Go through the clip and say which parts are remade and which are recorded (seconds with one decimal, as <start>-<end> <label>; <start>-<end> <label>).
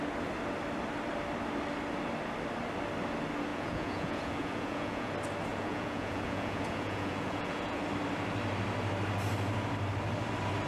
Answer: 0.0-3.5 recorded; 3.5-5.1 remade; 5.1-5.5 recorded; 5.5-7.8 remade; 7.8-10.7 recorded